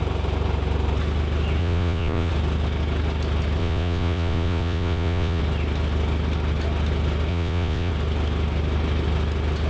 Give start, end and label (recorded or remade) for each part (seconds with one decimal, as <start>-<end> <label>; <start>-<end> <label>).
0.0-1.6 recorded; 1.6-2.3 remade; 2.3-3.6 recorded; 3.6-5.4 remade; 5.4-7.3 recorded; 7.3-7.9 remade; 7.9-9.7 recorded